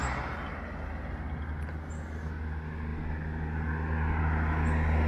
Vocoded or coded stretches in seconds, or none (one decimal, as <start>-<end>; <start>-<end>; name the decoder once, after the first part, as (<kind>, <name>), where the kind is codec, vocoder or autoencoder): none